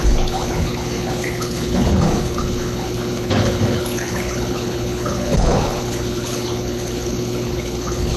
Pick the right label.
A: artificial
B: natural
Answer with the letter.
A